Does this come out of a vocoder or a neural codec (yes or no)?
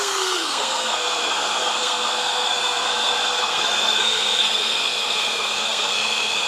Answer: yes